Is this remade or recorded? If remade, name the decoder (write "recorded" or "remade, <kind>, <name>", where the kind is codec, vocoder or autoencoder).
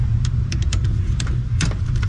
remade, vocoder, BigVGAN v2